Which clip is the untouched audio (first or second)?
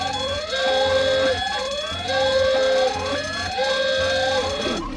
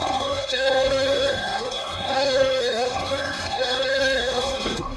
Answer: first